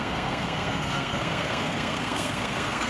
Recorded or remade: remade